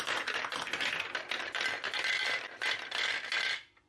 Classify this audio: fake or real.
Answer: real